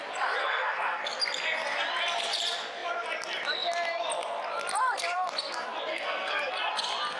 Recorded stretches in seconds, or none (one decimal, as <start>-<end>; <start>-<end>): 0.0-0.4; 1.1-5.9; 6.5-7.2